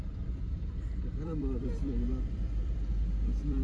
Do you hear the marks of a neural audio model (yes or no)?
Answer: yes